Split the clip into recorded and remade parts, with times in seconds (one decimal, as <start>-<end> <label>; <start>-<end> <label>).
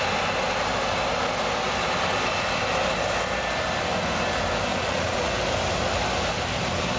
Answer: 0.0-4.7 recorded; 4.7-5.3 remade; 5.3-7.0 recorded